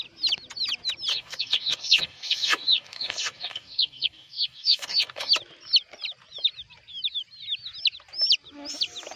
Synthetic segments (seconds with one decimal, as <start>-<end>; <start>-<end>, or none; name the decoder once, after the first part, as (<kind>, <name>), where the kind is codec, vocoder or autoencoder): 1.1-5.3 (codec, DAC)